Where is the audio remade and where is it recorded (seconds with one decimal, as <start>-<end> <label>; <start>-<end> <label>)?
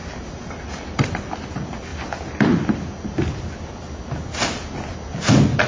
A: 0.0-5.7 recorded